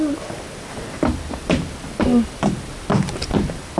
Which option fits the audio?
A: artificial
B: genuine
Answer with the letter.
B